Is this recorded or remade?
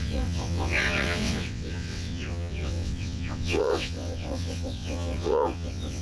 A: remade